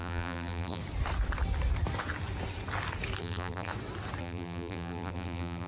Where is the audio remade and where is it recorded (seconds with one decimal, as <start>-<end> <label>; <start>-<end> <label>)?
0.0-0.8 remade; 0.8-3.2 recorded; 3.2-3.7 remade; 3.7-4.2 recorded; 4.2-5.7 remade